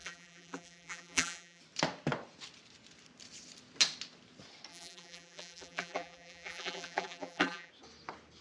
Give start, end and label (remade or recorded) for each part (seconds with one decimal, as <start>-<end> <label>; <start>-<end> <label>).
0.0-1.6 remade; 1.6-4.7 recorded; 4.7-7.7 remade; 7.7-8.4 recorded